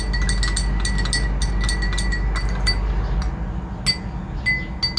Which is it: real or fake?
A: real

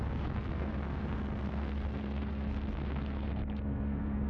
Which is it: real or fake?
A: fake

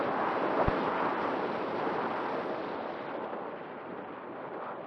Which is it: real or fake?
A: real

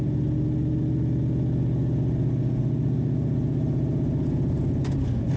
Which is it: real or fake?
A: real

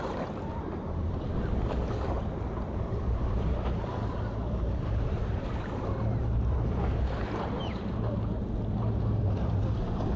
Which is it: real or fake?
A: fake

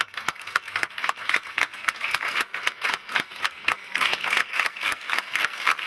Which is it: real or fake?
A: fake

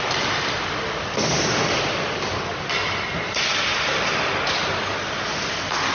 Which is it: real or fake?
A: real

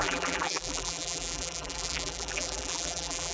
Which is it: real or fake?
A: fake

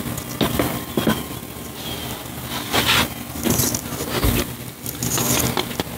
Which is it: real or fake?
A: real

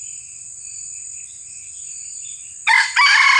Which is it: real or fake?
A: real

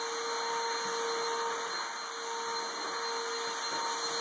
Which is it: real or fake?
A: real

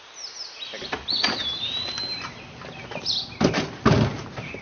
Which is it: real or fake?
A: real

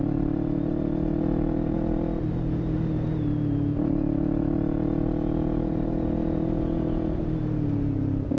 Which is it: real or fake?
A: real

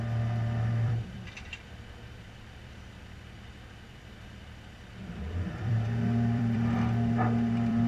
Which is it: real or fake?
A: fake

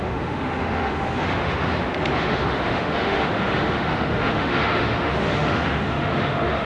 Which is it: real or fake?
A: fake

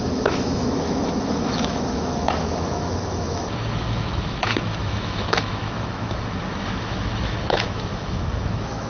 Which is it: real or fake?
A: fake